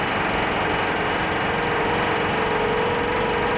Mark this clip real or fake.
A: real